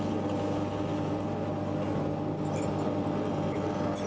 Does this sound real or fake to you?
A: real